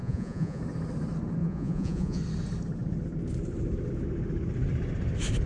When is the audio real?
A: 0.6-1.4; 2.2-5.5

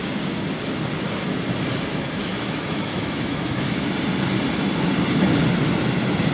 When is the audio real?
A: 0.0-2.3; 3.9-6.3

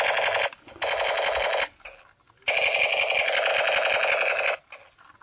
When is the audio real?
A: 0.0-5.2

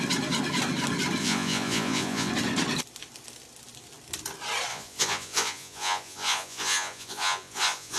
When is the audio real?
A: 0.0-1.2; 2.3-4.7